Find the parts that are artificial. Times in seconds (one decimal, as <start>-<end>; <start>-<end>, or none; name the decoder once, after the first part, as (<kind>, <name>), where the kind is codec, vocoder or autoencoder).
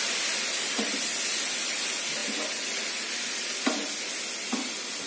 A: none